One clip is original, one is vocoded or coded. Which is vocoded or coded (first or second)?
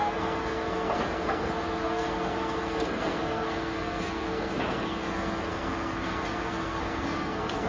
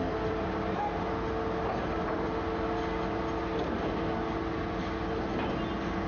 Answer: first